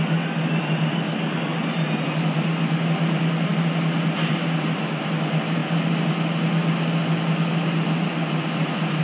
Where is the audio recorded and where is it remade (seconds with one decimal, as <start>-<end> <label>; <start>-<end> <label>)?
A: 0.0-9.0 recorded